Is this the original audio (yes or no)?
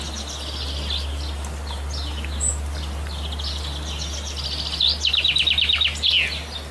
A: yes